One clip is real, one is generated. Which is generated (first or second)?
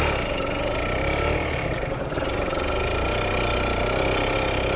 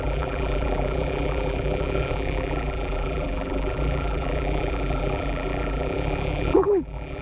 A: second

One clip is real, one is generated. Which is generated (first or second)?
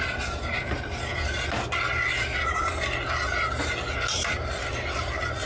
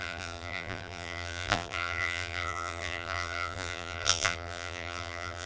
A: second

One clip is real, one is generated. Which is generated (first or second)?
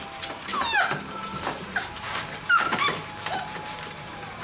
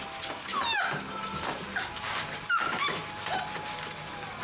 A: first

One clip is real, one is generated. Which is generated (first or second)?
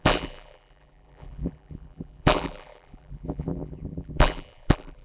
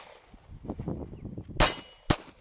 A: first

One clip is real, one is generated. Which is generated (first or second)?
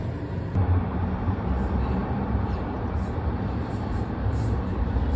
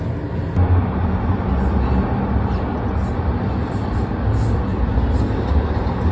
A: first